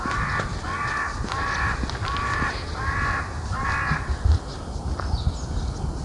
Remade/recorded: recorded